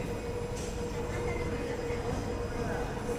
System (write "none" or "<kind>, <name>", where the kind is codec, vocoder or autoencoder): none